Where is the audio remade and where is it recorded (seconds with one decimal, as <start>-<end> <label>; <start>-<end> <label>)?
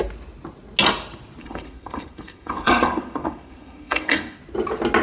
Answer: 0.0-1.4 recorded; 1.4-4.4 remade; 4.4-5.0 recorded